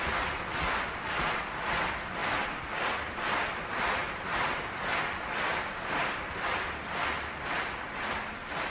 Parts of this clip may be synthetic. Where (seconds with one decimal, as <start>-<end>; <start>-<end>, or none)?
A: none

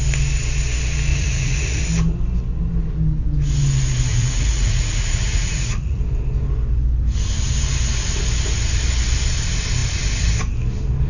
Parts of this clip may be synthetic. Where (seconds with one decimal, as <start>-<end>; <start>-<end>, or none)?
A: 1.1-1.8; 4.1-6.0

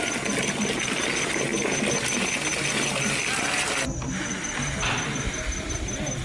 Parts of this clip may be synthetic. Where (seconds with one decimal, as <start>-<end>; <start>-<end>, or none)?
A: none

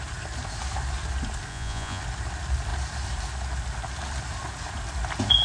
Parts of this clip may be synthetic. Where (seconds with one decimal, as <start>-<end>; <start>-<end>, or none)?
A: 1.5-2.0

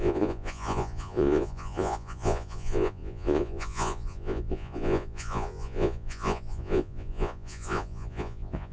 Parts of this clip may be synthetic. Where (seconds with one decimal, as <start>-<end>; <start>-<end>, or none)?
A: 0.0-8.7

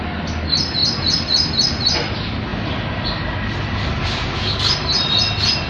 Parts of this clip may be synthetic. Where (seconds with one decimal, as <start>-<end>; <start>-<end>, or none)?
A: none

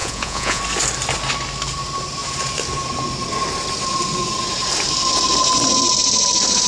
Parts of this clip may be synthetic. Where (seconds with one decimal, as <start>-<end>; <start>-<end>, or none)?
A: 0.0-0.6